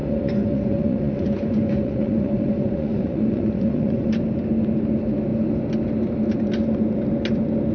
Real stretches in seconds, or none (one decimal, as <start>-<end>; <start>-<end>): 4.1-7.7